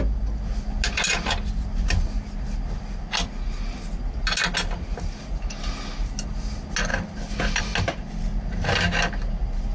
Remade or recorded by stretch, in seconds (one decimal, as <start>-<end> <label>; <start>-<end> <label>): 0.0-9.7 recorded